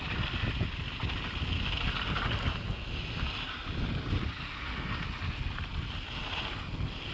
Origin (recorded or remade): recorded